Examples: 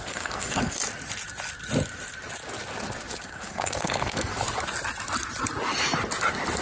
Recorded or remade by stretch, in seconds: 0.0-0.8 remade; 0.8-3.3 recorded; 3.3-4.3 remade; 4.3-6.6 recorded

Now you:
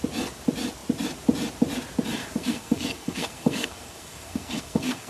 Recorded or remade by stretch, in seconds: 0.0-2.2 recorded; 2.2-5.1 remade

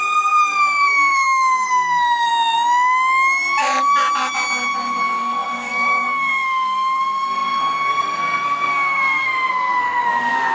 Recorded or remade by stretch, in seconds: 0.0-2.3 remade; 2.3-5.0 recorded; 5.0-10.5 remade

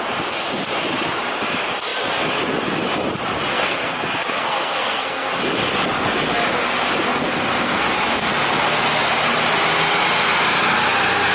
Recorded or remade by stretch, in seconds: 0.0-3.5 recorded; 3.5-5.3 remade; 5.3-7.1 recorded; 7.1-7.9 remade; 7.9-11.3 recorded

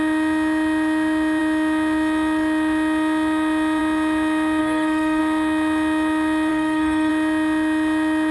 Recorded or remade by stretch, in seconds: 0.0-4.6 recorded; 4.6-5.2 remade; 5.2-6.5 recorded; 6.5-7.1 remade; 7.1-8.3 recorded

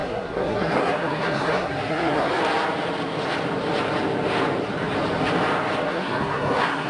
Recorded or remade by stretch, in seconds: 0.0-2.4 remade; 2.4-5.8 recorded; 5.8-6.9 remade

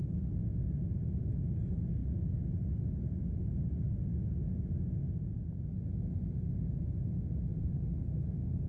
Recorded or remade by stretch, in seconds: 0.0-8.7 recorded